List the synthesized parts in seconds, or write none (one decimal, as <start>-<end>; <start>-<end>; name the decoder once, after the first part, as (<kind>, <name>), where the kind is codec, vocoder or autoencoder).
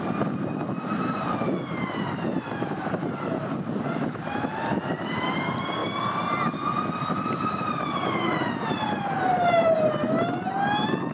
none